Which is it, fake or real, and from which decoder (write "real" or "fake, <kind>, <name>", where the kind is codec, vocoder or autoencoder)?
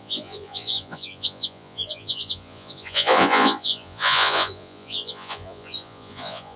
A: fake, vocoder, Vocos